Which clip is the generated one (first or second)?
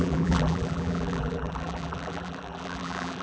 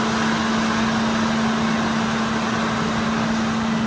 first